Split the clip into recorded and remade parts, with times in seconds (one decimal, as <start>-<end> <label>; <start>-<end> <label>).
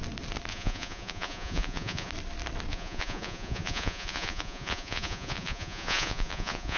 0.0-0.5 recorded; 0.5-2.1 remade; 2.1-2.7 recorded; 2.7-6.8 remade